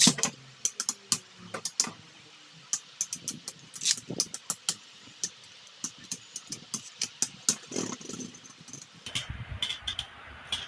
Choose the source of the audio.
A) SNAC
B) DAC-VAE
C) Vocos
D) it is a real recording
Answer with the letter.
D